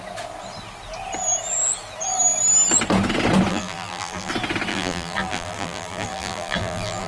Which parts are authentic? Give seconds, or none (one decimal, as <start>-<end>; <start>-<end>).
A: 0.0-3.5; 4.3-4.7